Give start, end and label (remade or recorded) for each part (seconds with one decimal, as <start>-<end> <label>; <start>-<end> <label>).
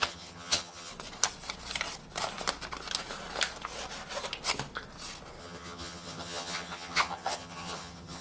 0.0-0.9 remade; 0.9-5.4 recorded; 5.4-8.2 remade